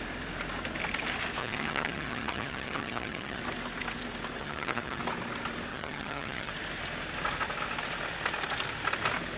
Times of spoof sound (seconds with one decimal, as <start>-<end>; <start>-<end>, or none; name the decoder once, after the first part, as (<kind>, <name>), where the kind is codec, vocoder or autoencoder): 1.4-3.4 (vocoder, HiFi-GAN); 4.4-5.0; 5.7-6.5